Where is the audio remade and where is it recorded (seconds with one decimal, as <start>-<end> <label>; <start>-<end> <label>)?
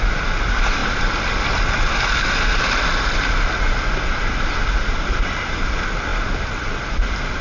0.0-7.4 recorded